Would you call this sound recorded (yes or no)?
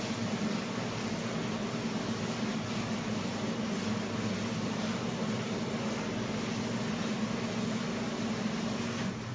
yes